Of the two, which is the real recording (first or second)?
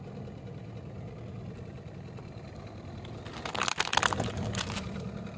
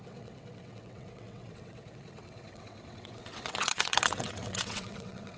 first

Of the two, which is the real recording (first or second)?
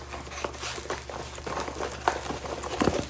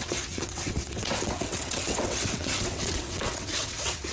first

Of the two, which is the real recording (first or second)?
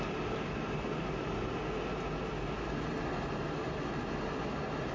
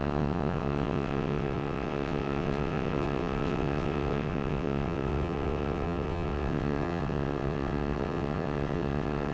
first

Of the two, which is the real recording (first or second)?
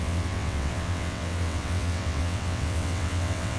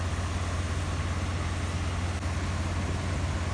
second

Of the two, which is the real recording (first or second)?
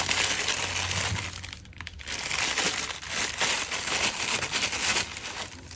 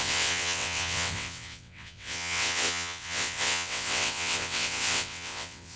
first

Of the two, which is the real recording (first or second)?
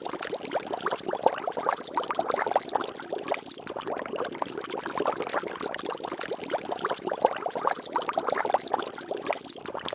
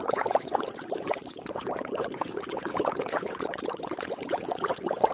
first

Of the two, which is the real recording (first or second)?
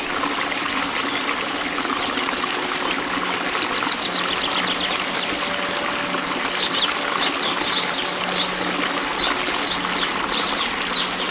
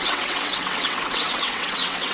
first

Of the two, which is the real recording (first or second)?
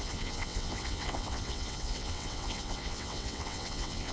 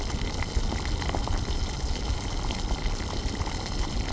second